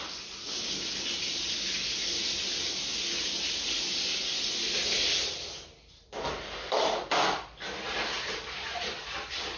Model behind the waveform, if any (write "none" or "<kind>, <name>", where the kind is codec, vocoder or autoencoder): none